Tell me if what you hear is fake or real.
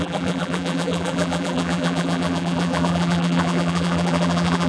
fake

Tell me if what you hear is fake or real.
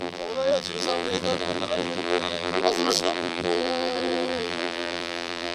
fake